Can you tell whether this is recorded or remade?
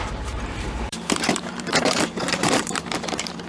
remade